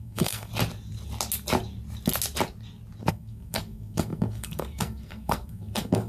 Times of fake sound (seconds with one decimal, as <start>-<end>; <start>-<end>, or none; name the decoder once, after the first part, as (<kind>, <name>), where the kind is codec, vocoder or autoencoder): 0.0-0.5 (codec, SNAC); 3.1-6.1